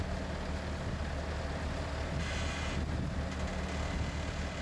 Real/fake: real